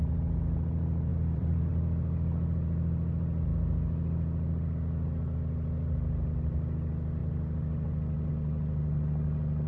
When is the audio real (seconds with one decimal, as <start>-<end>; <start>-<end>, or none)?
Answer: 0.0-1.1; 1.7-9.7